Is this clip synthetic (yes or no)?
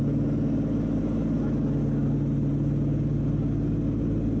no